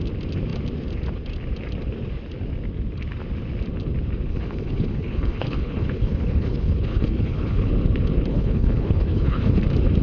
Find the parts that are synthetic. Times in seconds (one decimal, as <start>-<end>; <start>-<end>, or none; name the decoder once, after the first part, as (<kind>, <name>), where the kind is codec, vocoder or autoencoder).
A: 4.3-7.7 (codec, HILCodec); 8.3-9.6